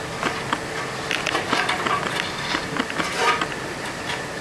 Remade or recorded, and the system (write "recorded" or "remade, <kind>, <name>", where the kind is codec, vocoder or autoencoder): recorded